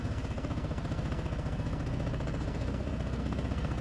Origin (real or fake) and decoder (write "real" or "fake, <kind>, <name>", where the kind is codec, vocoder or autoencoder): fake, codec, SNAC